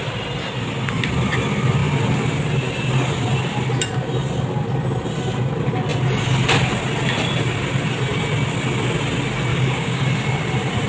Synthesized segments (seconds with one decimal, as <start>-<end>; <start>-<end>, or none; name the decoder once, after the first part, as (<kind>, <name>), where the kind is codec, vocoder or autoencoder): 9.5-10.0 (codec, DAC)